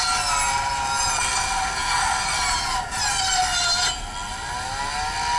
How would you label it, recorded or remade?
recorded